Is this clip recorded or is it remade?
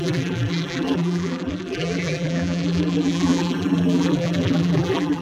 remade